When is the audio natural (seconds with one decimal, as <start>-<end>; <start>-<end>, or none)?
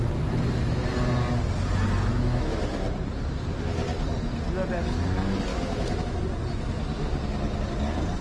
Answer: 0.0-2.1; 2.6-5.5; 6.2-8.2